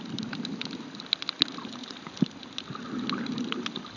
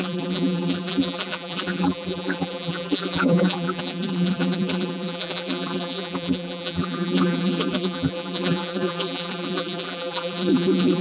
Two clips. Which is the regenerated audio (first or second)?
second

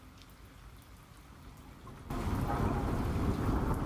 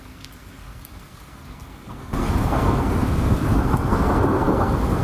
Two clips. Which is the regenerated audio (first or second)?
second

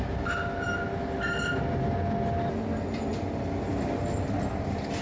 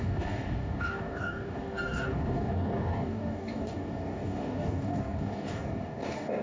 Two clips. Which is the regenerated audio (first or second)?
second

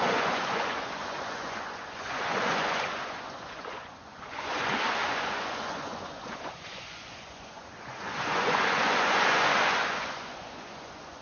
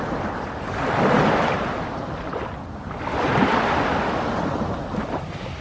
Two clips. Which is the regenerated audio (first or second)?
first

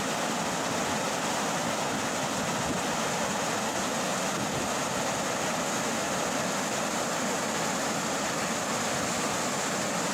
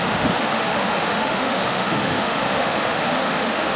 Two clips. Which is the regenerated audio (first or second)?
second